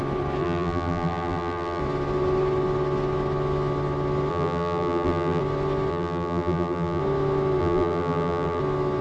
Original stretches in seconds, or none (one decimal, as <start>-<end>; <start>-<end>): 0.0-0.4; 1.8-4.3; 5.4-5.9; 7.0-7.6; 8.6-9.0